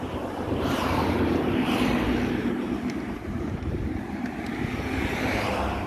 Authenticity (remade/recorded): remade